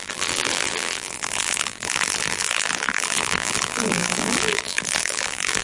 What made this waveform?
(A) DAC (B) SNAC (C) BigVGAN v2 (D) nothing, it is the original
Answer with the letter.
C